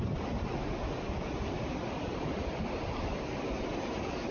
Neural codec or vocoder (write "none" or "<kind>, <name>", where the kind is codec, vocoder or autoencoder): none